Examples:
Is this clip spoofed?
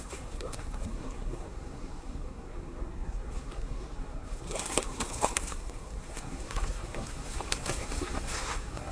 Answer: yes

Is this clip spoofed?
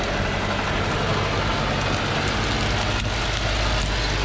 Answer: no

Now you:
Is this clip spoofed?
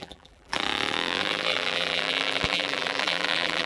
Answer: yes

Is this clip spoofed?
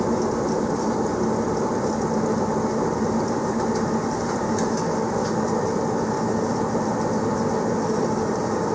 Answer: yes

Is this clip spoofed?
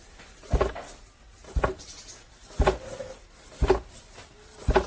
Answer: no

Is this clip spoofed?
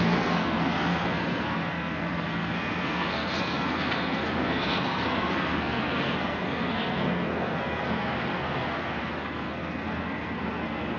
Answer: yes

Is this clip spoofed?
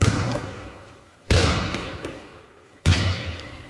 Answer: yes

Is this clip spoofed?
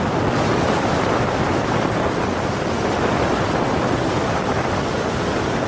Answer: no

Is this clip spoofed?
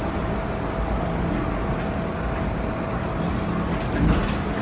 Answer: no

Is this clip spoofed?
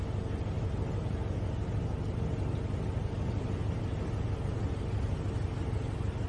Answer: no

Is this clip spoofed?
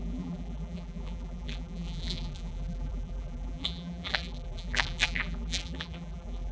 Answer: yes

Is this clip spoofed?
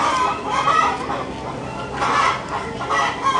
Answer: no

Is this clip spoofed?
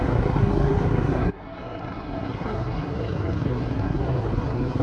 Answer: yes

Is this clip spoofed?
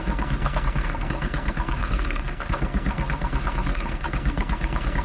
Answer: yes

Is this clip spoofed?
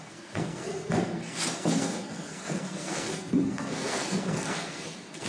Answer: yes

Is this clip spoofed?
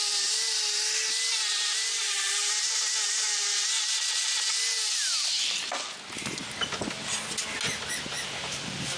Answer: no